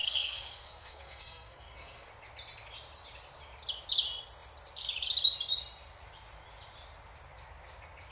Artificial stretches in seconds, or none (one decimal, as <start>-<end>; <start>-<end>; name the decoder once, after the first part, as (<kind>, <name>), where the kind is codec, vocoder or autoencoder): 0.0-2.1 (codec, SNAC)